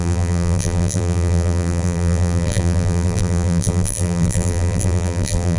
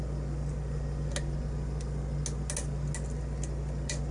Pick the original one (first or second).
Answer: second